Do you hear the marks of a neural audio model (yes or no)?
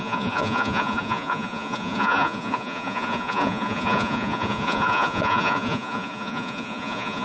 yes